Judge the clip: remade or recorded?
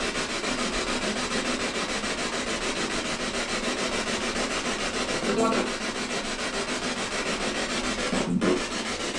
recorded